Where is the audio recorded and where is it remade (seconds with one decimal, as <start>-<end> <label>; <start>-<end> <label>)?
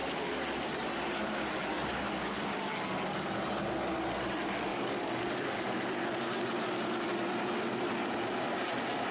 0.0-4.7 recorded; 4.7-5.8 remade; 5.8-9.1 recorded